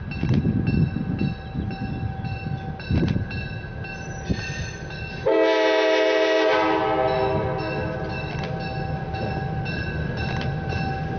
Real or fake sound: real